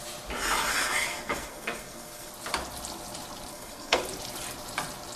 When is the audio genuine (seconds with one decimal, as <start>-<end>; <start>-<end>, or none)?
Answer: 0.0-0.7; 2.3-3.5; 4.0-5.2